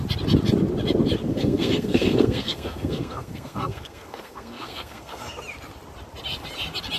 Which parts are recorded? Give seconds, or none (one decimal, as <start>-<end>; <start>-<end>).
0.0-1.3; 5.4-7.0